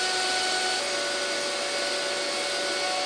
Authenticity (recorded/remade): recorded